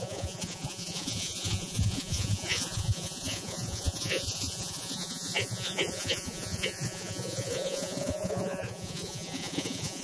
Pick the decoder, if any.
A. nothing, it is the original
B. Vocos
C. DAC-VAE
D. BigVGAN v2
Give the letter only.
B